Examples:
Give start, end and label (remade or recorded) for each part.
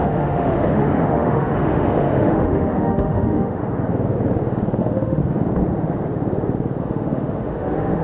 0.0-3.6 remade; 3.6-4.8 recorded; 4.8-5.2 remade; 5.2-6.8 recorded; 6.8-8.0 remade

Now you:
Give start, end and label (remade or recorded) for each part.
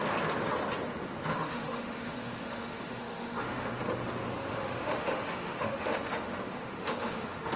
0.0-1.3 recorded; 1.3-3.8 remade; 3.8-4.5 recorded; 4.5-7.6 remade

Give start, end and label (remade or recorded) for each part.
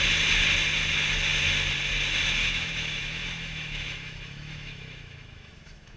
0.0-2.4 recorded; 2.4-6.0 remade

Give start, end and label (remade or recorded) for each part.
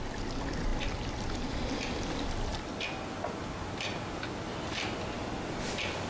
0.0-6.1 recorded